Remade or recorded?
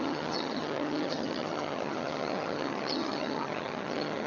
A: remade